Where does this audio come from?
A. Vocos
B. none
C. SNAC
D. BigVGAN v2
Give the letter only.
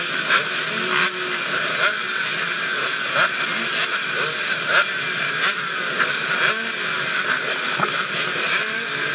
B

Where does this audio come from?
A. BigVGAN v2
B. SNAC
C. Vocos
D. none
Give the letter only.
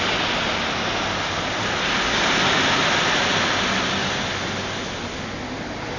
D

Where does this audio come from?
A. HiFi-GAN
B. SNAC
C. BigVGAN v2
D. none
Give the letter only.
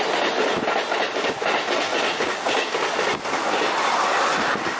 D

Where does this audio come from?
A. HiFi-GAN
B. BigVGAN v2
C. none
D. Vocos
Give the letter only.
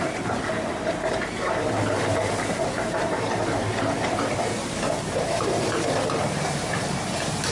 B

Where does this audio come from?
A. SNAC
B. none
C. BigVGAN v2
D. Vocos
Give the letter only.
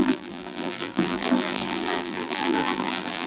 C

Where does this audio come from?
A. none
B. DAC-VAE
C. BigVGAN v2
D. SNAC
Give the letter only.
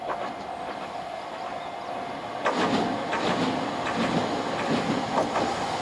A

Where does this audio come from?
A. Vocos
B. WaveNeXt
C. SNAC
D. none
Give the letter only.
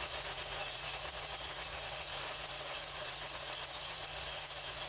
A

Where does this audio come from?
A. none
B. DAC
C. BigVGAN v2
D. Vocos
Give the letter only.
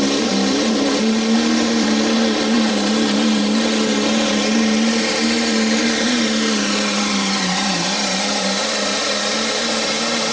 C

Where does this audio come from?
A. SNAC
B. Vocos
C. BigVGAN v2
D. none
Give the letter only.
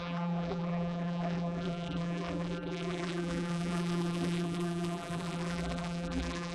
C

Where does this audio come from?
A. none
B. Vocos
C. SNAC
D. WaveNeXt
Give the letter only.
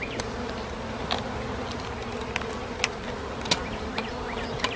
A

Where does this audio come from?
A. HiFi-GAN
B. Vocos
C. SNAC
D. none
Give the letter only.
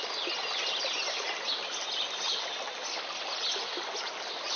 D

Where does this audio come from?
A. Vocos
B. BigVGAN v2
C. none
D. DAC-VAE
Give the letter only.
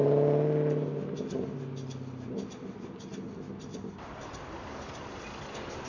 C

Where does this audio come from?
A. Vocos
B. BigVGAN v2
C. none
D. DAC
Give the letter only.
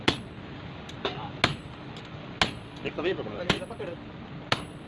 C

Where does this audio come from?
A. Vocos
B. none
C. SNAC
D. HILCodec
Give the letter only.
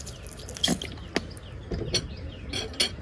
B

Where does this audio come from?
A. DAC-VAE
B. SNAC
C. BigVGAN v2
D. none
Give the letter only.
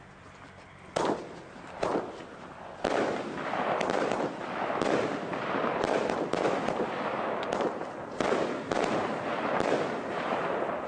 D